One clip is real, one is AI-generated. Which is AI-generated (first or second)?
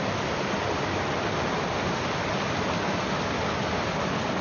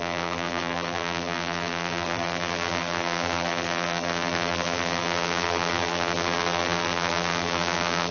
second